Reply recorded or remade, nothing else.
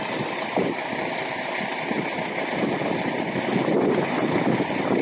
recorded